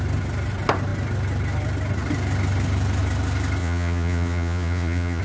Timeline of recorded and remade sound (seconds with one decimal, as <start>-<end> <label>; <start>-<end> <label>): 0.0-3.6 recorded; 3.6-5.2 remade